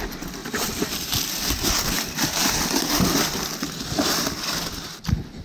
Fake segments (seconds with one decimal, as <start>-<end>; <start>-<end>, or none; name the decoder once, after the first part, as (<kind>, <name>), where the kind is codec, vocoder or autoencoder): 0.4-0.9 (vocoder, BigVGAN v2)